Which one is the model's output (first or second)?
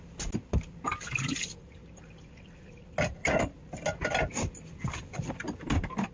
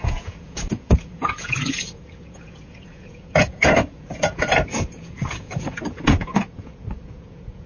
second